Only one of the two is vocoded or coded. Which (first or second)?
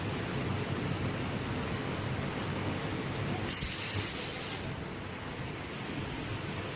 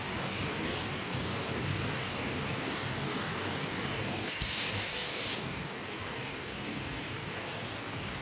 second